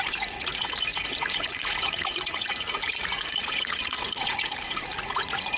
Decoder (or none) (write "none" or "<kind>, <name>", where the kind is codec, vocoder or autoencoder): vocoder, Vocos